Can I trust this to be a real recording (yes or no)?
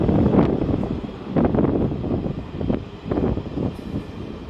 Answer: yes